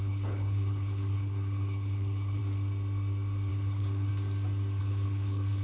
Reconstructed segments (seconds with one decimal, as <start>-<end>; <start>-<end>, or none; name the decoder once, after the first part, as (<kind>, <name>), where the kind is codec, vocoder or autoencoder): 0.0-2.4 (codec, HILCodec); 3.5-4.1; 4.8-5.6